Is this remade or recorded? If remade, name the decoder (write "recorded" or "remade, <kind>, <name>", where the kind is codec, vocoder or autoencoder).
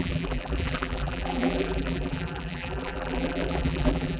remade, vocoder, BigVGAN v2